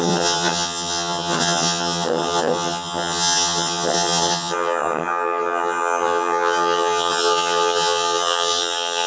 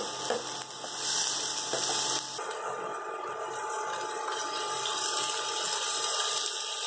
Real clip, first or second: second